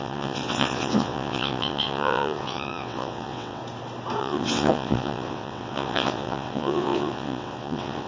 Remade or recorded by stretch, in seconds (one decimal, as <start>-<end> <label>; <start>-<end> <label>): 0.0-3.6 remade; 3.6-4.2 recorded; 4.2-8.1 remade